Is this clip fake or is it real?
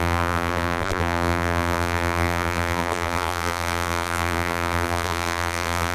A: fake